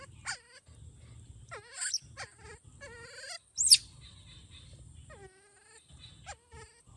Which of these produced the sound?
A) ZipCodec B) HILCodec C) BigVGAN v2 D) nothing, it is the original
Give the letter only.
D